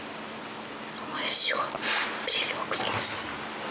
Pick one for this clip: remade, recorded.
recorded